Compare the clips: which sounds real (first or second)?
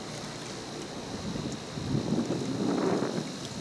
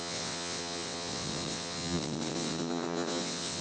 first